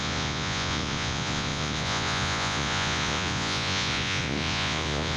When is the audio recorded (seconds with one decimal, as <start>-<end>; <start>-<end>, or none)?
none